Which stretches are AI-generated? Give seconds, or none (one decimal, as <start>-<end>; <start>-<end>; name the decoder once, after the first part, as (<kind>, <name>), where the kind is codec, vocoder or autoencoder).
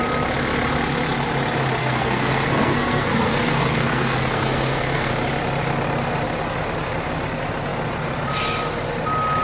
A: 1.8-5.1 (codec, SNAC)